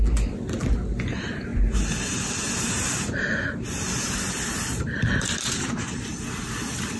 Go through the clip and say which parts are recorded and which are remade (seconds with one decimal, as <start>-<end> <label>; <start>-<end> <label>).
0.0-1.5 recorded; 1.5-5.7 remade; 5.7-7.0 recorded